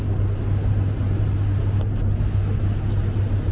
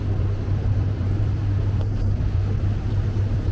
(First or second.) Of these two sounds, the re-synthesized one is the second